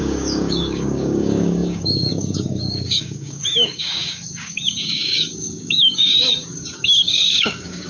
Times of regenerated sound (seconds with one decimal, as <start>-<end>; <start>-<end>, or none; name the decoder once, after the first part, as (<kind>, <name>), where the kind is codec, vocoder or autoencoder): 0.0-7.9 (codec, DAC)